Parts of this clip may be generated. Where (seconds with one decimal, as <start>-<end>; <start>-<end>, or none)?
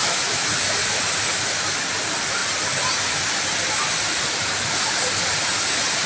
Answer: 0.0-0.5